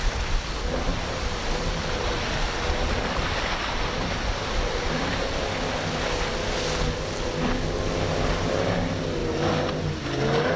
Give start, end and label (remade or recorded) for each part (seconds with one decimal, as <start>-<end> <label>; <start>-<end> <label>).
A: 0.0-0.9 recorded; 0.9-5.5 remade; 5.5-9.2 recorded; 9.2-9.8 remade; 9.8-10.6 recorded